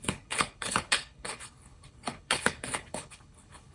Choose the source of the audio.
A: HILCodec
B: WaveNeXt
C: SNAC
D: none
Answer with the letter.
A